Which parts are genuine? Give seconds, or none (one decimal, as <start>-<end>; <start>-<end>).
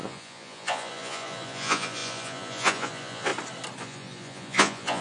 3.3-3.8